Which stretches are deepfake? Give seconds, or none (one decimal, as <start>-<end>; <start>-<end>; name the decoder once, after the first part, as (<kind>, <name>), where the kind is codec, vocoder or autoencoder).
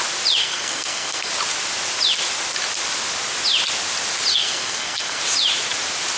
0.4-1.3 (codec, SNAC); 4.3-5.2